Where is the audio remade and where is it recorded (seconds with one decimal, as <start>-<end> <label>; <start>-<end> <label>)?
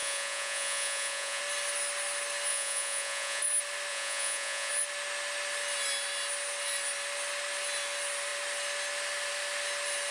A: 0.0-1.4 remade; 1.4-2.5 recorded; 2.5-3.4 remade; 3.4-3.9 recorded; 3.9-4.7 remade; 4.7-10.1 recorded